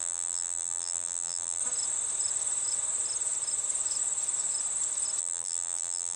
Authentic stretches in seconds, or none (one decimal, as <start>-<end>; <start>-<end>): 1.6-5.2